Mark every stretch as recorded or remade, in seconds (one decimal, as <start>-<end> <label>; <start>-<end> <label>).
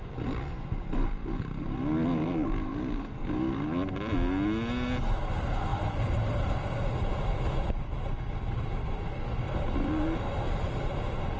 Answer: 0.0-11.4 recorded